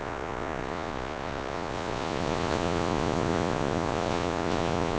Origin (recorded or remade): remade